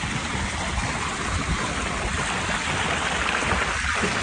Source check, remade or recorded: recorded